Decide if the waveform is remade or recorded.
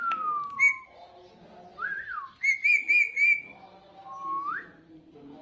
recorded